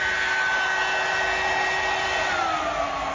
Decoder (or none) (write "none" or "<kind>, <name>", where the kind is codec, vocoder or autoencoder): none